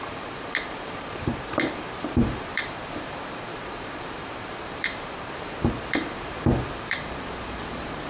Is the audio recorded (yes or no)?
no